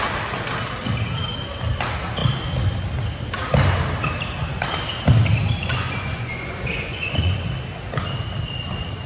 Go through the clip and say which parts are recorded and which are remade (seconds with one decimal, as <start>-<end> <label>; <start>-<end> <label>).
0.0-5.7 recorded; 5.7-7.5 remade; 7.5-9.1 recorded